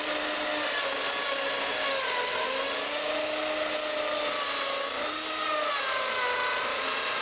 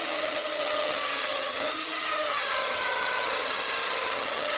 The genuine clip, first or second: first